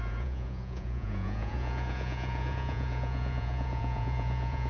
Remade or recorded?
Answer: remade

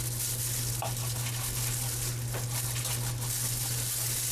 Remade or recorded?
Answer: recorded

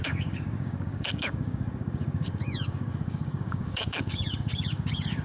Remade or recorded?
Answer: remade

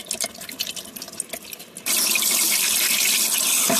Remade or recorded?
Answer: recorded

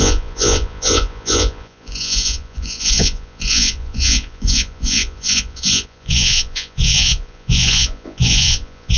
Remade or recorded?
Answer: remade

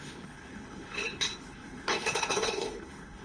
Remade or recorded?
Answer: remade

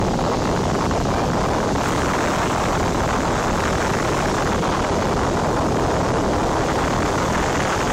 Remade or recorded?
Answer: recorded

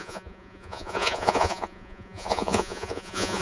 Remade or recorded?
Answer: remade